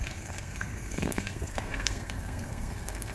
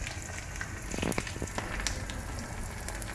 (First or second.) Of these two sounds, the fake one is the first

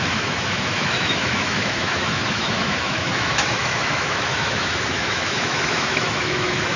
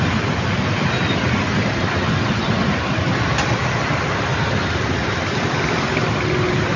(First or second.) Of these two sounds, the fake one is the first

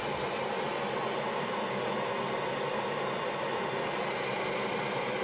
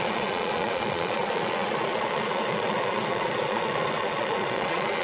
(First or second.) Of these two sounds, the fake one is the second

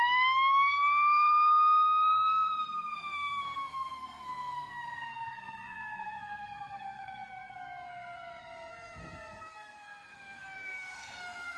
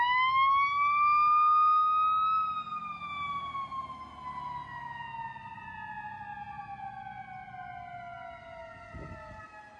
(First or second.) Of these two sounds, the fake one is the first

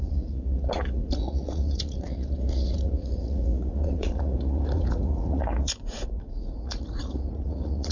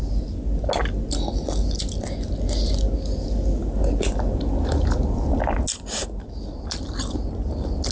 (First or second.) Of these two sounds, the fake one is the first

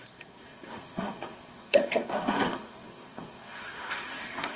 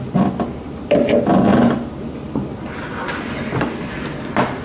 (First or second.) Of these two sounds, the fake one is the first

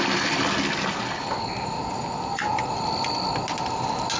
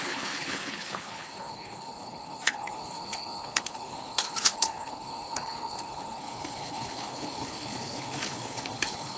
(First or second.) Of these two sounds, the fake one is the second